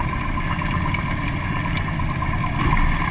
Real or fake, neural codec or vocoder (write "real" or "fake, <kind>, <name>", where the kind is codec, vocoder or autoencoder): real